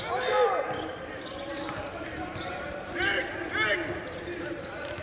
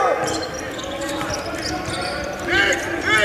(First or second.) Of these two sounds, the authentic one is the second